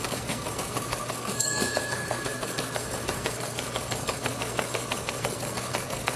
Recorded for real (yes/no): no